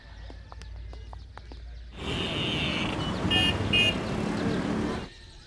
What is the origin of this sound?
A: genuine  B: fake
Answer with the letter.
A